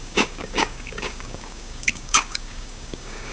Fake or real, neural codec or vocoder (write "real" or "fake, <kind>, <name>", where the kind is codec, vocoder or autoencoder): fake, codec, DAC